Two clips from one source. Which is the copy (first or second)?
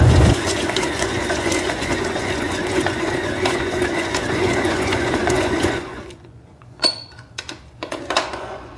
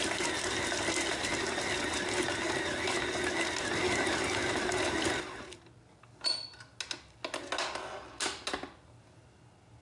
first